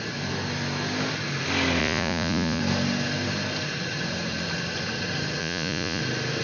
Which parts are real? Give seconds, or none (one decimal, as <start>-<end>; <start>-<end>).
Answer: 0.0-1.8; 2.6-5.4; 6.0-6.4